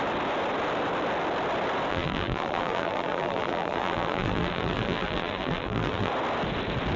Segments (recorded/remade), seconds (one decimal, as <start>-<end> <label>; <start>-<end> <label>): 0.0-1.9 recorded; 1.9-6.1 remade; 6.1-7.0 recorded